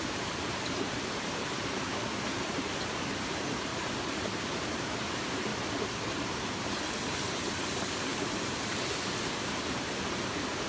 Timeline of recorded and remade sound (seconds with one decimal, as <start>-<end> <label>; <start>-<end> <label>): 0.0-3.7 remade; 3.7-4.8 recorded; 4.8-5.5 remade; 5.5-6.1 recorded; 6.1-10.7 remade